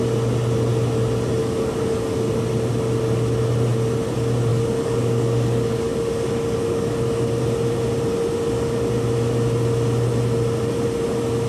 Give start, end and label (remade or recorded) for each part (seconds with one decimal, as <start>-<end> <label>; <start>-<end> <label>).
0.0-1.4 recorded; 1.4-2.3 remade; 2.3-4.5 recorded; 4.5-7.4 remade; 7.4-11.5 recorded